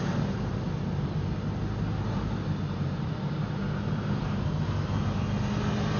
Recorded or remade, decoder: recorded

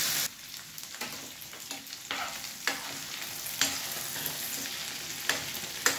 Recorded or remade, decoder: recorded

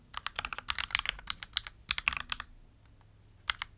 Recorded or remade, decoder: recorded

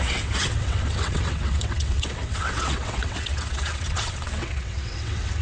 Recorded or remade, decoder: remade, vocoder, WaveNeXt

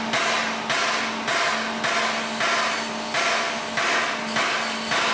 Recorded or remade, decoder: recorded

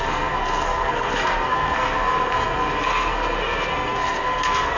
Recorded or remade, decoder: remade, codec, SNAC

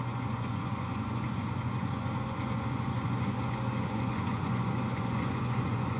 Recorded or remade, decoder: remade, vocoder, Vocos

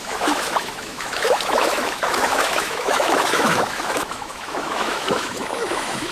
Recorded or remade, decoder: remade, autoencoder, DAC-VAE